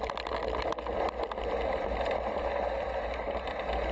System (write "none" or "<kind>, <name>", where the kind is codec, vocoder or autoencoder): none